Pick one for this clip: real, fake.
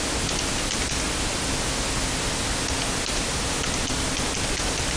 real